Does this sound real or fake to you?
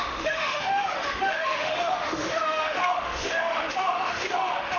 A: fake